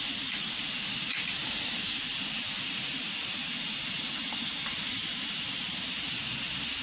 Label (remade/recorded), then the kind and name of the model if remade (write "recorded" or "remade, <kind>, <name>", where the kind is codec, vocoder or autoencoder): recorded